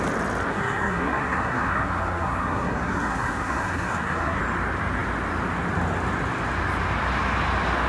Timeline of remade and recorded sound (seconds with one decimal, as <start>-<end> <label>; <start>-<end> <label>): 0.0-0.5 recorded; 0.5-4.4 remade; 4.4-7.9 recorded